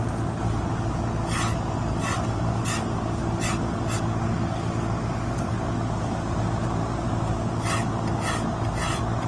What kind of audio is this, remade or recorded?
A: recorded